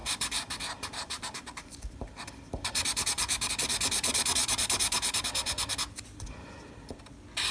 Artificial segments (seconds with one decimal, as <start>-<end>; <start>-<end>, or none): 0.0-3.5; 4.4-7.0